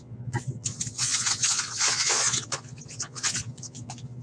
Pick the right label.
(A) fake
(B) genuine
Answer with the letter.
A